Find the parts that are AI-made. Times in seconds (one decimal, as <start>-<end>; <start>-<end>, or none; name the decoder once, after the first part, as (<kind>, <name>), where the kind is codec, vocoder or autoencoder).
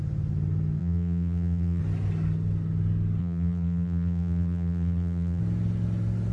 0.8-1.8 (vocoder, BigVGAN v2); 3.2-5.4